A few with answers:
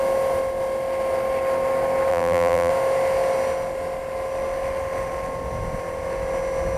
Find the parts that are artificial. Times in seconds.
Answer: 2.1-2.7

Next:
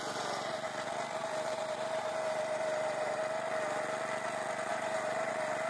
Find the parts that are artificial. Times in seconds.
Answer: 1.2-3.2; 4.7-5.3

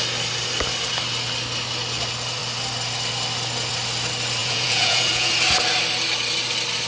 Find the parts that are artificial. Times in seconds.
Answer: 4.4-5.3